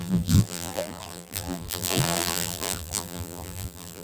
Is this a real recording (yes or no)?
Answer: no